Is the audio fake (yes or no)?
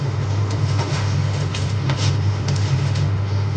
yes